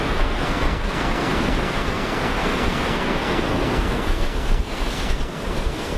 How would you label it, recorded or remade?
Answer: remade